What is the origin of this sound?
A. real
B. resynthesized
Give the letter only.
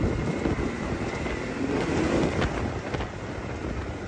A